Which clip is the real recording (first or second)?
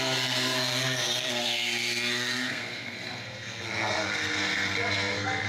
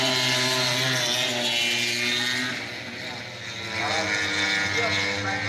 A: second